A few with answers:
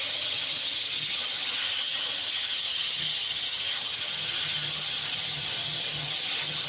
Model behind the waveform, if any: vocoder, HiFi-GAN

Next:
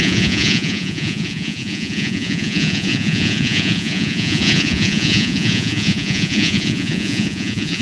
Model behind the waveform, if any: vocoder, Vocos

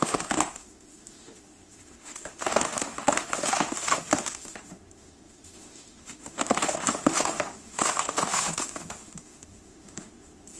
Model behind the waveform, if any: autoencoder, DAC-VAE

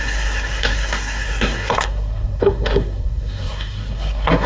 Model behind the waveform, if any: codec, SNAC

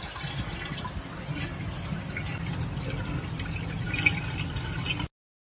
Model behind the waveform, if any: none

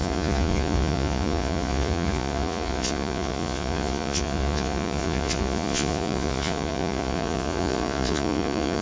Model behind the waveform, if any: vocoder, Vocos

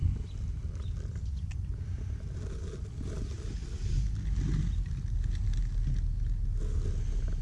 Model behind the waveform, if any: none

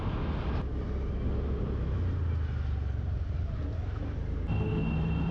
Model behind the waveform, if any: none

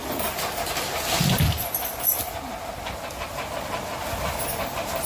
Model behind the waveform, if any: none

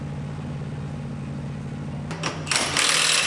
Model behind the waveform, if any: none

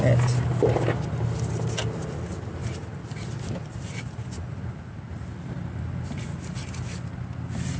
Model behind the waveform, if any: none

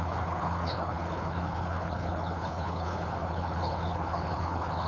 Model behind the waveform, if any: codec, HILCodec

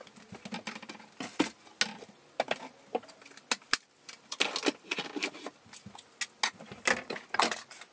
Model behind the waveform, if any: none